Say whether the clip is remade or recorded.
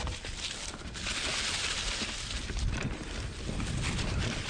recorded